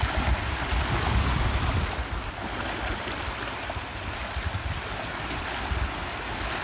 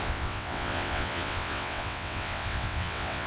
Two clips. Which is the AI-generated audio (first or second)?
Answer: second